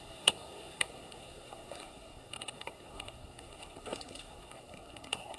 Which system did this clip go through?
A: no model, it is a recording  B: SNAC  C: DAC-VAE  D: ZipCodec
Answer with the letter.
B